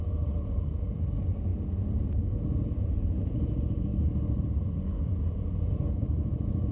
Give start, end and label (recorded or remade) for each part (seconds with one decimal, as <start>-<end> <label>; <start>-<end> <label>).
0.0-3.9 remade; 3.9-4.9 recorded; 4.9-6.7 remade